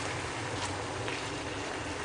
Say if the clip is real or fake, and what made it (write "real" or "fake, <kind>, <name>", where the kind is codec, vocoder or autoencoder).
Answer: real